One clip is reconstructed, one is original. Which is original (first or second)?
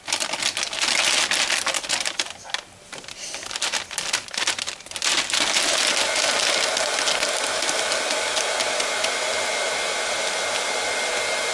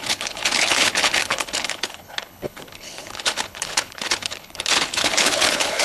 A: first